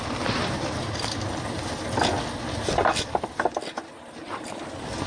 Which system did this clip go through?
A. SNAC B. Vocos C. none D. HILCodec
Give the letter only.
C